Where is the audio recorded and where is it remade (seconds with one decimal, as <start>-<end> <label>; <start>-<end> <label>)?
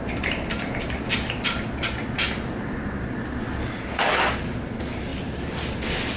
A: 0.0-6.2 recorded